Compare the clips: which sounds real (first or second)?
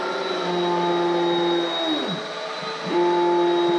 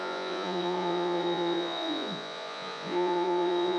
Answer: first